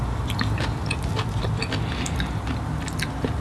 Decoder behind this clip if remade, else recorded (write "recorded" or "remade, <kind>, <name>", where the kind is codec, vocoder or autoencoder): recorded